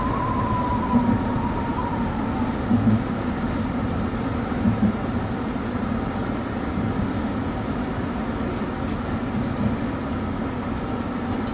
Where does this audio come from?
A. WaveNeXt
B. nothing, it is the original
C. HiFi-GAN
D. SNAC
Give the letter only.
B